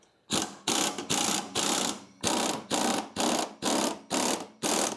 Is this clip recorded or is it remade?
recorded